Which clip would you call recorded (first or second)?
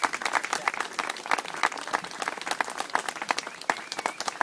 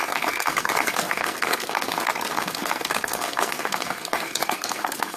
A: first